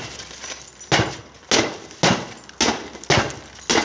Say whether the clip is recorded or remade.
recorded